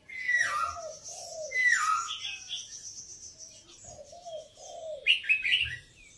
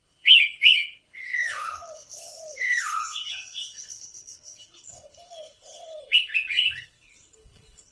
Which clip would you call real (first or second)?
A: first